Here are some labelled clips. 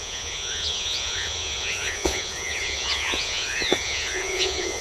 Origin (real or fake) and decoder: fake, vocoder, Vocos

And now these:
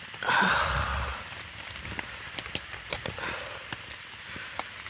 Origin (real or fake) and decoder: real